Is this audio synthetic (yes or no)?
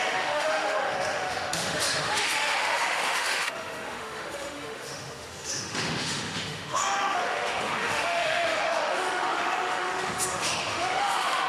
yes